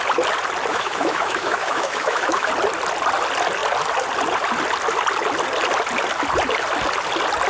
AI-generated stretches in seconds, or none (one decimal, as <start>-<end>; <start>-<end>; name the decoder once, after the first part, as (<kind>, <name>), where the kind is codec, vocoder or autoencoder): 0.7-2.5 (autoencoder, DAC-VAE)